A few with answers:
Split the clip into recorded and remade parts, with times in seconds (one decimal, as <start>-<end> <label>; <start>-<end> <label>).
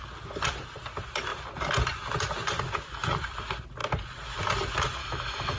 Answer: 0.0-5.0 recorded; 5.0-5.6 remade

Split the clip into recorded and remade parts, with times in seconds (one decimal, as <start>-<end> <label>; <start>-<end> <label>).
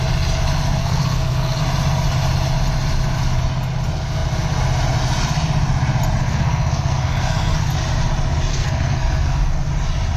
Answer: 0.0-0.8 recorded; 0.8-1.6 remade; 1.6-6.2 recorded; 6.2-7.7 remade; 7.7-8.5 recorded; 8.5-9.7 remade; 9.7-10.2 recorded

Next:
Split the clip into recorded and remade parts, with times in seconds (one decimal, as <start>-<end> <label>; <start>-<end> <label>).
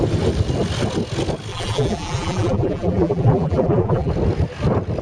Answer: 0.0-1.5 recorded; 1.5-4.1 remade; 4.1-5.0 recorded